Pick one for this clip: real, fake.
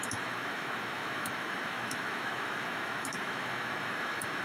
fake